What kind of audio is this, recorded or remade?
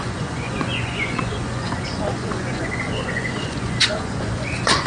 remade